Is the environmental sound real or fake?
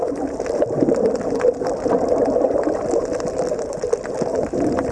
real